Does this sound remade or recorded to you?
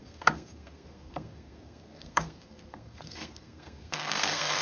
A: remade